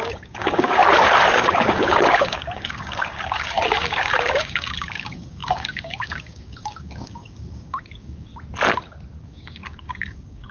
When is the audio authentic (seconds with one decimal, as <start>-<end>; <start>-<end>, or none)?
0.8-1.3; 8.3-9.2